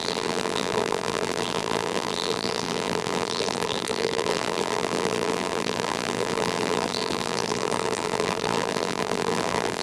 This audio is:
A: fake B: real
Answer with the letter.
A